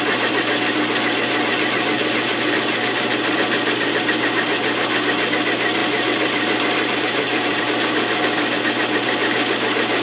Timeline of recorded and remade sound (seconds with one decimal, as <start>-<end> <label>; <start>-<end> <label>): 0.0-5.8 recorded; 5.8-7.6 remade; 7.6-10.0 recorded